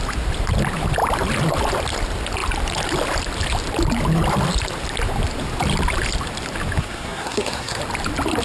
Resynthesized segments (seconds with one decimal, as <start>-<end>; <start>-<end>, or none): 6.8-7.8